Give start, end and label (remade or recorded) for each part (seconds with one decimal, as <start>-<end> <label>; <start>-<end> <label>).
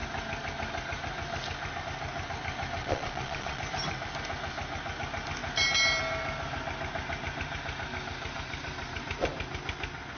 0.0-2.8 recorded; 2.8-3.6 remade; 3.6-10.2 recorded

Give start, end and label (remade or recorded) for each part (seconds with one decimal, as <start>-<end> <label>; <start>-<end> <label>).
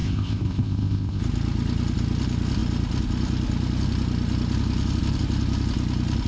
0.0-1.2 remade; 1.2-6.3 recorded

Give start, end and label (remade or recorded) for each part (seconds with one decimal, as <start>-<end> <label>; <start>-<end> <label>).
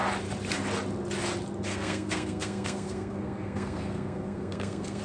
0.0-1.7 recorded; 1.7-5.0 remade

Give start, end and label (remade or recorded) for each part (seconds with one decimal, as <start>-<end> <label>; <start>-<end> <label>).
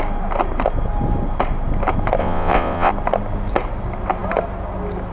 0.0-2.2 recorded; 2.2-2.9 remade; 2.9-5.1 recorded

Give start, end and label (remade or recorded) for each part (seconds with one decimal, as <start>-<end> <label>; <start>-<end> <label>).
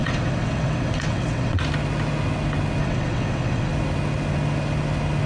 0.0-1.6 remade; 1.6-2.8 recorded; 2.8-3.7 remade; 3.7-5.3 recorded